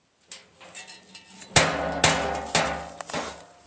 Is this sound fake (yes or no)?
no